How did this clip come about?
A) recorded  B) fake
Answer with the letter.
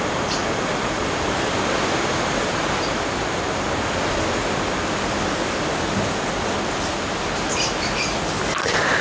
A